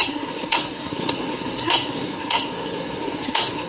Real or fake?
fake